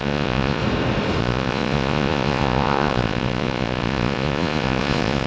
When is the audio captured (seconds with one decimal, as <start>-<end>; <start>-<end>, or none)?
0.6-1.2